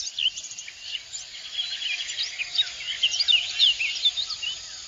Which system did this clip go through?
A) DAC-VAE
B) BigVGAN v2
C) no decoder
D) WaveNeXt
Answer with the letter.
C